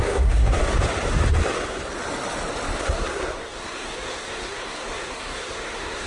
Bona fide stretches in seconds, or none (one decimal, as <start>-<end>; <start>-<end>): 0.6-2.8